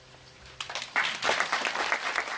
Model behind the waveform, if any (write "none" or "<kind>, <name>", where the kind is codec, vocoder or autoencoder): none